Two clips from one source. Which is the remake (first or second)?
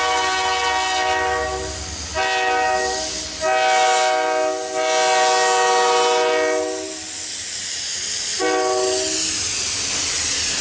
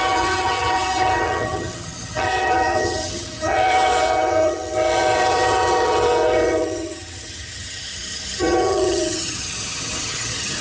second